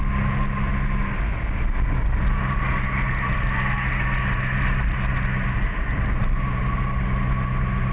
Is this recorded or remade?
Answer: recorded